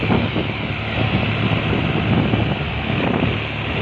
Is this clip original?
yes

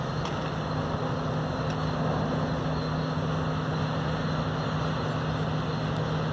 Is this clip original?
yes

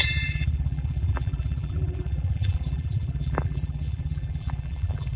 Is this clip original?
no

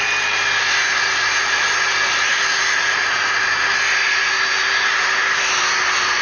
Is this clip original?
yes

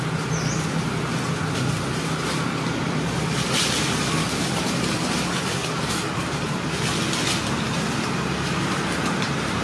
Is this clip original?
yes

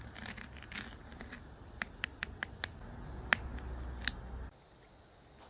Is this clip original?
yes